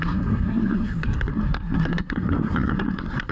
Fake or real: fake